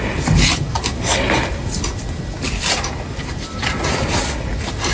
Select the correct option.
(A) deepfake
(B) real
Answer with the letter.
B